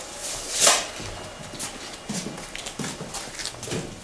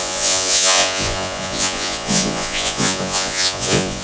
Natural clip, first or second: first